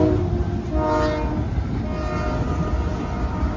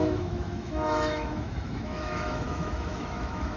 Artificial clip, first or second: second